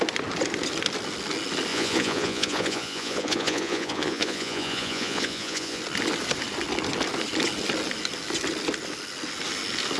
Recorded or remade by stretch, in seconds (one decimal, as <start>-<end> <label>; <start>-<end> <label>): 0.0-1.7 recorded; 1.7-5.8 remade; 5.8-10.0 recorded